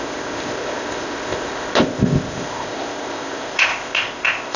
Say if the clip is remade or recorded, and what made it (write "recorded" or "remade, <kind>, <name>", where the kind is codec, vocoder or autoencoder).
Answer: remade, codec, ZipCodec